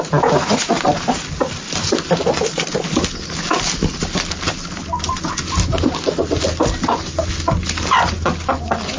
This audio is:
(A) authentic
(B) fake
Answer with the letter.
A